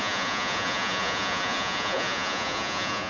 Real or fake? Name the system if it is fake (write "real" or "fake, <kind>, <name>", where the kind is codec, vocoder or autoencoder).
fake, vocoder, Vocos